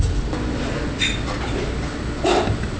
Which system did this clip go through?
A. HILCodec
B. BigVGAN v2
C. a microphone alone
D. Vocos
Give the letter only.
C